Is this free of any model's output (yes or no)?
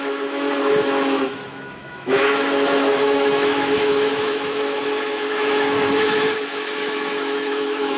no